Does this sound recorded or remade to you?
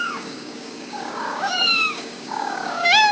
remade